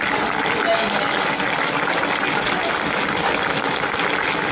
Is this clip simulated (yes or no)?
no